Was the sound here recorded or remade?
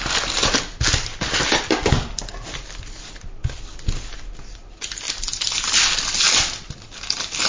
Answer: recorded